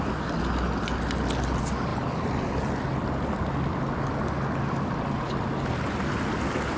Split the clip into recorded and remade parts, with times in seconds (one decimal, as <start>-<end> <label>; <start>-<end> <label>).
0.0-6.8 recorded

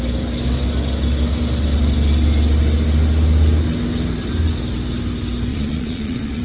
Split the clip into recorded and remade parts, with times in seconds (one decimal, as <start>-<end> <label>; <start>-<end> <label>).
0.0-5.5 recorded; 5.5-6.4 remade

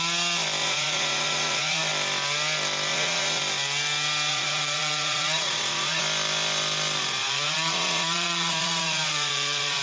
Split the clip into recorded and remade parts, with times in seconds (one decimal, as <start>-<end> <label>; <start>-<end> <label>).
0.0-0.6 recorded; 0.6-1.8 remade; 1.8-2.9 recorded; 2.9-3.4 remade; 3.4-4.3 recorded; 4.3-6.0 remade; 6.0-7.2 recorded; 7.2-9.8 remade

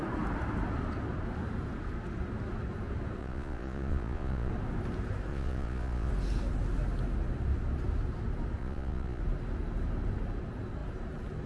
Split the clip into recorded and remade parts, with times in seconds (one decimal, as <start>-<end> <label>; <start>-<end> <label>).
0.0-3.2 recorded; 3.2-4.5 remade; 4.5-5.3 recorded; 5.3-6.1 remade; 6.1-8.6 recorded; 8.6-9.2 remade; 9.2-11.5 recorded

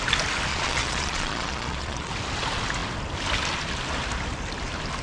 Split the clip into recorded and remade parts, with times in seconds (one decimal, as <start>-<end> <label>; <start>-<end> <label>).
0.0-0.5 recorded; 0.5-2.1 remade; 2.1-5.0 recorded

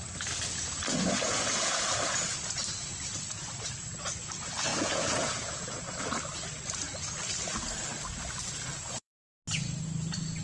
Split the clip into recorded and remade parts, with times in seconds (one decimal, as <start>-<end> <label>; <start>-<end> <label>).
0.0-1.2 recorded; 1.2-2.6 remade; 2.6-4.7 recorded; 4.7-6.0 remade; 6.0-8.7 recorded; 8.7-9.3 remade; 9.3-10.4 recorded